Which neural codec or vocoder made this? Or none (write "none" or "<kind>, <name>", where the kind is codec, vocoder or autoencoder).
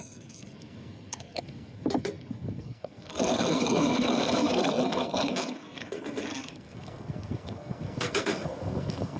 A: codec, SNAC